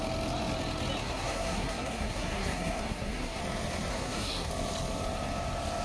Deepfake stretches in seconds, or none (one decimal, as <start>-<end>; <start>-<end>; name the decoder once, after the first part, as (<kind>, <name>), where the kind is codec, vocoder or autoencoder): 1.0-3.4 (codec, SNAC); 3.9-4.5